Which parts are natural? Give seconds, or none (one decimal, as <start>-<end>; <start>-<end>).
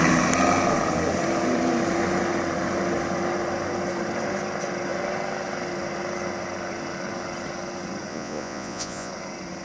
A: 0.0-8.1; 9.1-9.6